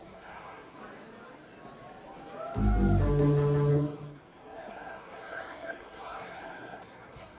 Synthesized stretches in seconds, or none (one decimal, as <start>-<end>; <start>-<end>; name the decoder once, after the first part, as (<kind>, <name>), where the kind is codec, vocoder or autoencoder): 0.0-0.8 (codec, SNAC); 3.7-7.4